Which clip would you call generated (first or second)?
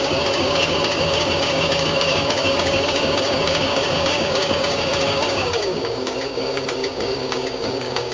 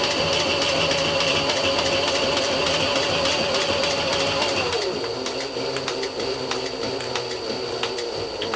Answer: first